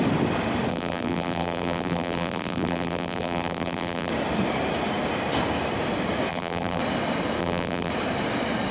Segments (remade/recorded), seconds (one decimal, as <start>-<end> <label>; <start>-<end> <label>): 0.0-0.7 recorded; 0.7-4.1 remade; 4.1-6.3 recorded; 6.3-6.8 remade; 6.8-7.4 recorded; 7.4-7.9 remade; 7.9-8.7 recorded